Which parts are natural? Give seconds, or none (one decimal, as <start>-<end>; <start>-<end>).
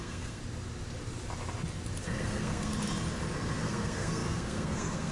0.4-2.0; 2.7-3.6